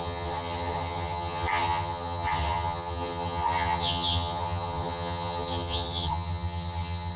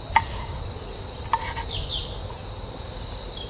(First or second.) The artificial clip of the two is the first